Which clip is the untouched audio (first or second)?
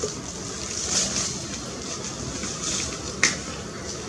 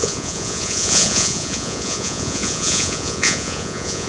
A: first